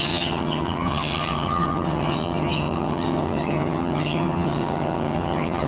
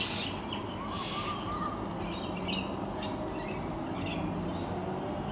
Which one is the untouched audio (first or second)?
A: second